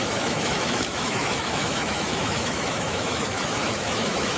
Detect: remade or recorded remade